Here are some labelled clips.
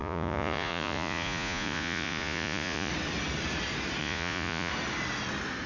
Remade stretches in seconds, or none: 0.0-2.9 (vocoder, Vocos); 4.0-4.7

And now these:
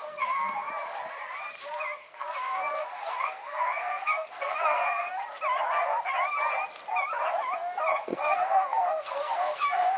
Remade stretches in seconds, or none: 0.0-0.7 (codec, SNAC); 2.0-5.1; 7.9-10.0